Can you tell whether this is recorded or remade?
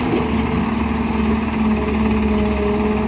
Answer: recorded